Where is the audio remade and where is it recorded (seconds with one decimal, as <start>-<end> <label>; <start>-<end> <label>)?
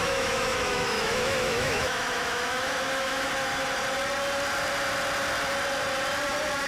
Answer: 0.0-3.3 remade; 3.3-6.7 recorded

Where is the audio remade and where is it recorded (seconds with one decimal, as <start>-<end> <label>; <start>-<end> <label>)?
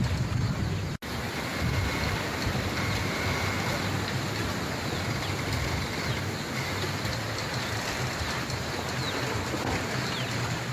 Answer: 0.0-10.7 recorded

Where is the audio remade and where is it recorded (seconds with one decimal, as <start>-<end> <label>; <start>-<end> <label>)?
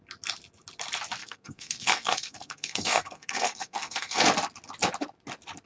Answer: 0.0-1.2 recorded; 1.2-4.2 remade; 4.2-5.7 recorded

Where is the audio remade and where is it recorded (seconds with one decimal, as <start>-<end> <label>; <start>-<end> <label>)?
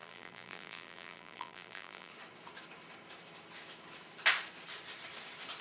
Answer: 0.0-2.1 remade; 2.1-5.6 recorded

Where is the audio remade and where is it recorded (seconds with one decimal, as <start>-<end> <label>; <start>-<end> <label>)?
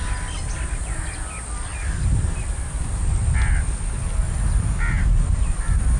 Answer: 0.0-6.0 recorded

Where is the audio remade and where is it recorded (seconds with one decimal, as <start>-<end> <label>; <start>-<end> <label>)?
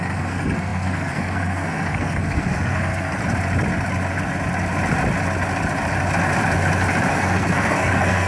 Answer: 0.0-3.2 remade; 3.2-7.1 recorded; 7.1-8.3 remade